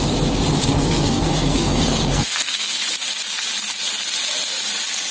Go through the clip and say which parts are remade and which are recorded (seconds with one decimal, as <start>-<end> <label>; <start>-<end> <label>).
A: 0.0-0.6 recorded; 0.6-2.8 remade; 2.8-5.1 recorded